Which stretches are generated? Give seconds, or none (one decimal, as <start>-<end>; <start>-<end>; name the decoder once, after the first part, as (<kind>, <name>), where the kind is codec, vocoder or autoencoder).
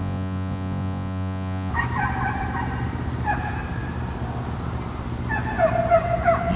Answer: 0.0-1.7 (vocoder, Vocos)